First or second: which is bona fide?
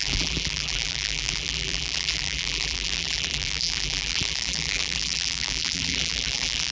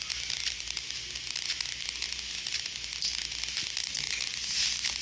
second